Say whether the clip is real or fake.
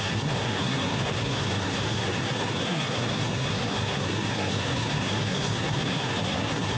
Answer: fake